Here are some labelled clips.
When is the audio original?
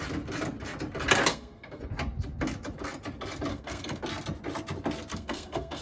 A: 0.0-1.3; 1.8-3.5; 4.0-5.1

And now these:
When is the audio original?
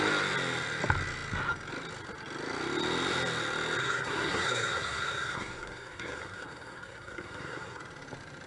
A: 0.0-3.8; 7.8-8.5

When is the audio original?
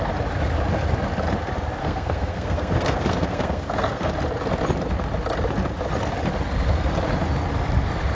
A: 0.0-1.8; 4.1-8.1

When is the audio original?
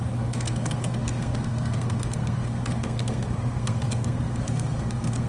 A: none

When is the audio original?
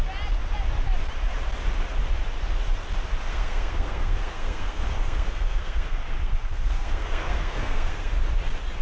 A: 0.0-3.3; 8.1-8.8